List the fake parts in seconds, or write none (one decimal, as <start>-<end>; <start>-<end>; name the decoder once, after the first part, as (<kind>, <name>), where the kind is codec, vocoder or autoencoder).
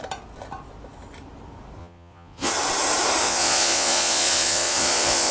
1.8-2.5 (vocoder, Vocos); 3.2-5.3